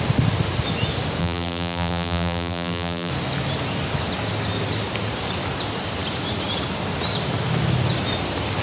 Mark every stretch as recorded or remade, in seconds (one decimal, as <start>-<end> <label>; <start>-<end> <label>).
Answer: 0.0-1.2 recorded; 1.2-3.1 remade; 3.1-8.6 recorded